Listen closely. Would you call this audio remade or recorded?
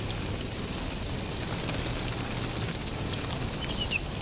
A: recorded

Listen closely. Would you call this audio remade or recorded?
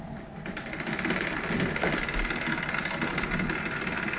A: recorded